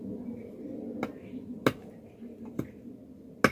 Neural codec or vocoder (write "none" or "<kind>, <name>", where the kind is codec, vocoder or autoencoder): none